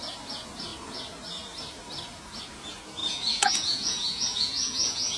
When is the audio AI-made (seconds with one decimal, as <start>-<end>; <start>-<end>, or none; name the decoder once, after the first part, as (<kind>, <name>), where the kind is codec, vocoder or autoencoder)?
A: 3.0-5.2 (vocoder, Vocos)